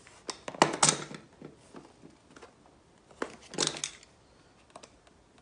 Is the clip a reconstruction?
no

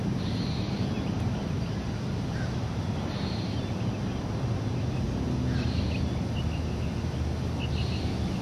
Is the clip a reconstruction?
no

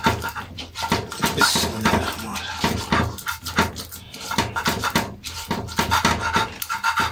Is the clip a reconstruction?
no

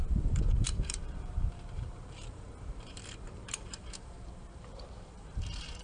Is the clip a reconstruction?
yes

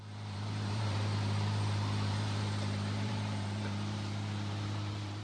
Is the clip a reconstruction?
yes